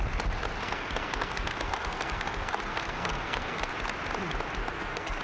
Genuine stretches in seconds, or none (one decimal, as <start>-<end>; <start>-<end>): 0.0-0.6; 3.7-4.6